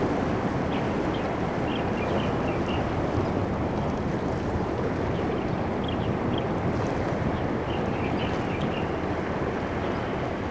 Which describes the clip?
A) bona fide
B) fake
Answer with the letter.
A